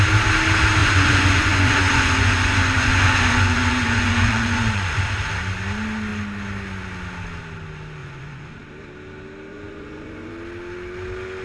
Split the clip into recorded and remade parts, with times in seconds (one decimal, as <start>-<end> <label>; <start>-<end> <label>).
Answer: 0.0-0.8 recorded; 0.8-5.0 remade; 5.0-8.0 recorded; 8.0-8.5 remade; 8.5-9.5 recorded; 9.5-10.3 remade; 10.3-11.4 recorded